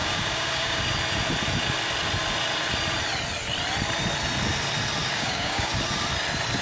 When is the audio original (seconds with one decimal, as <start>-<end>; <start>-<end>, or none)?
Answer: 0.8-5.0; 5.7-6.6